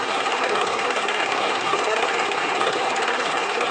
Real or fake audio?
fake